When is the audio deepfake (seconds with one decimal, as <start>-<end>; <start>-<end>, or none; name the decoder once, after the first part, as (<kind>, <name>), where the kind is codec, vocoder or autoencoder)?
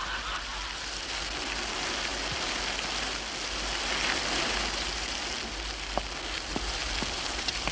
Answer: none